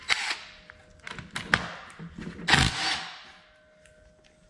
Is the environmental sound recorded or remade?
recorded